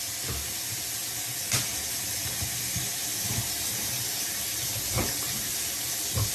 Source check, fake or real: real